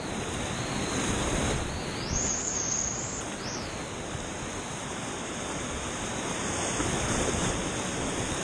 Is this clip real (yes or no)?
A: yes